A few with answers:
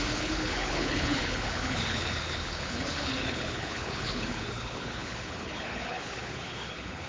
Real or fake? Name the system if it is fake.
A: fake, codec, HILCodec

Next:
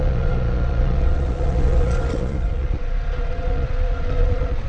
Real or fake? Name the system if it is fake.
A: fake, vocoder, Vocos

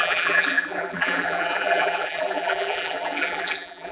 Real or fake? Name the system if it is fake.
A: fake, vocoder, BigVGAN v2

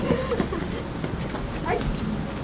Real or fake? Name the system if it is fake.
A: real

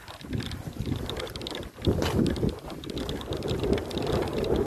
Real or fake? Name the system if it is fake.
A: real